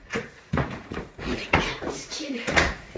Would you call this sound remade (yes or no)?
yes